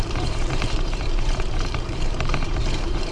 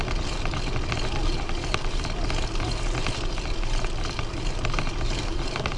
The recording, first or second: second